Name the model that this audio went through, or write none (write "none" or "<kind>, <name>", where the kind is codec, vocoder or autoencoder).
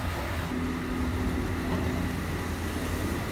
none